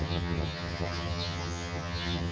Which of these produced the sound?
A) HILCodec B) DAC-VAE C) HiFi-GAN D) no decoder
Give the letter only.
C